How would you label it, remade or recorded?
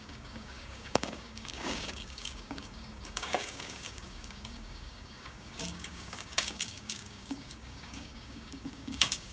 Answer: remade